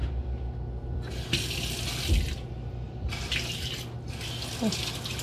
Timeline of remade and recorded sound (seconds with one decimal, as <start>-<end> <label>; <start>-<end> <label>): 0.0-5.2 recorded